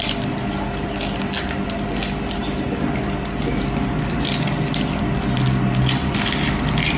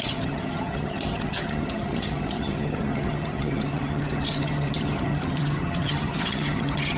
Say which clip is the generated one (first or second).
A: second